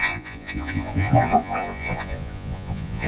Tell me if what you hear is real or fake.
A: fake